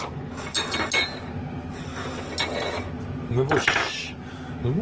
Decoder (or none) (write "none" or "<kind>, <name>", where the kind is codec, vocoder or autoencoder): none